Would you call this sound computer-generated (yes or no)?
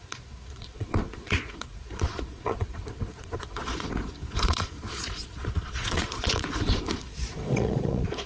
yes